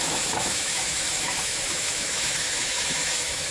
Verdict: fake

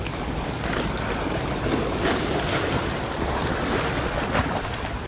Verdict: real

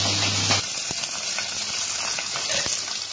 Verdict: real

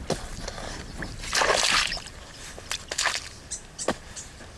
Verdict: real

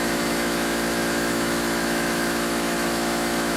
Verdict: fake